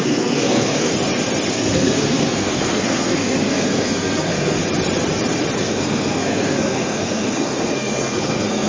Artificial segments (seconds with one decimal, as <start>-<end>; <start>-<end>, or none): 0.0-0.9; 1.5-4.6; 5.6-8.7